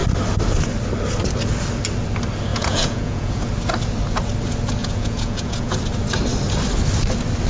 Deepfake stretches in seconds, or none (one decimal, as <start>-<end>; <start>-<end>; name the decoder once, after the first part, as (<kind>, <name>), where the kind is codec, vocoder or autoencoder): 2.5-3.5 (vocoder, Vocos); 4.8-5.8